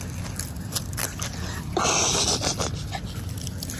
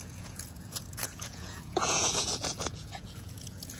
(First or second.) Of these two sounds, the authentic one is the first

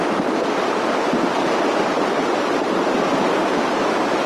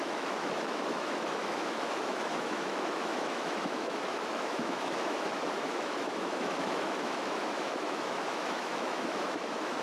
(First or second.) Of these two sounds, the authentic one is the first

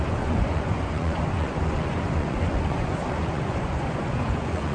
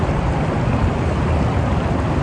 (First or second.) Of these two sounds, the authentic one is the second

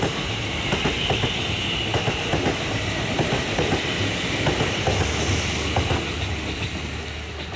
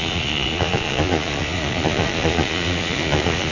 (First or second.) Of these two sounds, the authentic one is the first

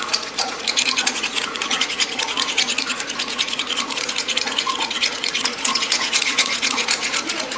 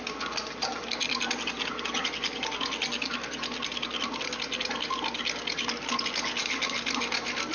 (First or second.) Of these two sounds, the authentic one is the second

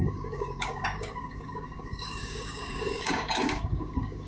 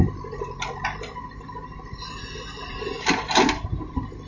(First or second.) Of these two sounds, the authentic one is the second